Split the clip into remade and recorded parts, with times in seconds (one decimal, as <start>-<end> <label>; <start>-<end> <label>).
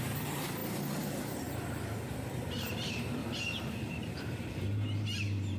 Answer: 0.0-0.6 remade; 0.6-2.1 recorded; 2.1-3.2 remade; 3.2-3.8 recorded; 3.8-5.6 remade